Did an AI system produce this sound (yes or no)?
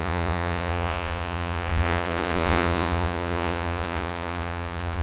yes